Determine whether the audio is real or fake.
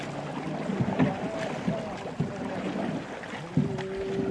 real